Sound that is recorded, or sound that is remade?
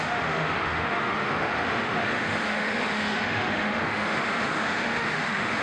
remade